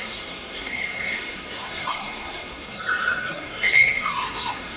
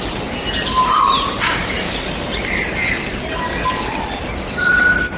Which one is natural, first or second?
second